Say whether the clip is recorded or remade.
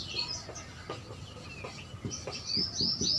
recorded